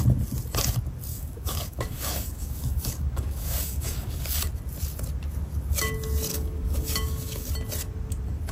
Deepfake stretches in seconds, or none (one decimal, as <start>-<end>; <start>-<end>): 1.1-4.2; 6.3-7.5